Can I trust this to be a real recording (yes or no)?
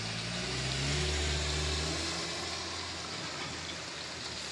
yes